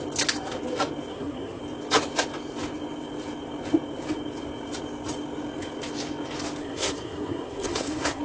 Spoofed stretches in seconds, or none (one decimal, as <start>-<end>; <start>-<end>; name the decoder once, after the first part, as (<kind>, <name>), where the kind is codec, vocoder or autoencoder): 1.1-1.6 (codec, SNAC); 6.6-8.2